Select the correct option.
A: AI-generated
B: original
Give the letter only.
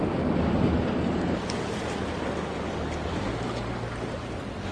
B